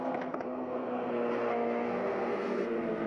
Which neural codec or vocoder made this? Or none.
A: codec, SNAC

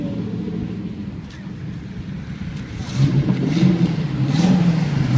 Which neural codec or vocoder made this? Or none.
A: none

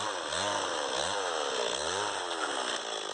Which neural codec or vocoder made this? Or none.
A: none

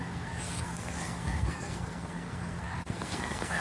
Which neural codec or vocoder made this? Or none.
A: codec, SNAC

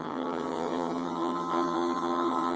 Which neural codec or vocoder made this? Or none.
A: vocoder, HiFi-GAN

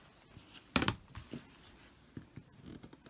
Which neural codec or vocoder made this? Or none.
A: none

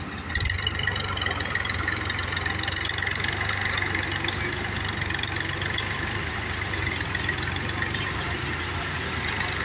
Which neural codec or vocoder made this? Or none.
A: none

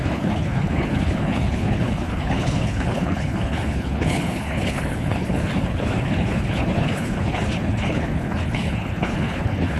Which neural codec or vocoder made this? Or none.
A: codec, HILCodec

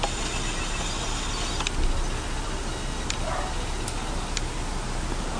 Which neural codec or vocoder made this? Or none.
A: none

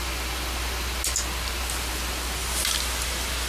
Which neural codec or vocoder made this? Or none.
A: none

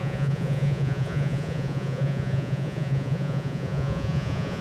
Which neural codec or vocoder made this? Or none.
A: vocoder, Vocos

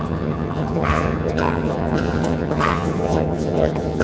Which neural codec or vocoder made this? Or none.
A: vocoder, HiFi-GAN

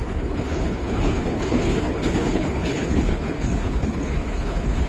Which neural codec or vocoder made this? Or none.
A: codec, HILCodec